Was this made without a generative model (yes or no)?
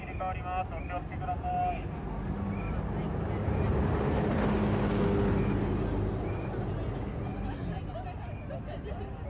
yes